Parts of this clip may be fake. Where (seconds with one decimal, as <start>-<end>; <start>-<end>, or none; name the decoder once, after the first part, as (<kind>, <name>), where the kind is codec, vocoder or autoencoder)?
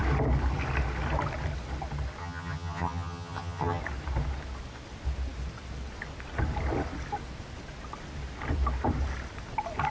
2.2-3.8 (vocoder, HiFi-GAN)